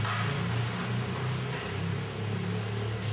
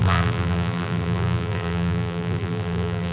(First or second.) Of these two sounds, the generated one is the second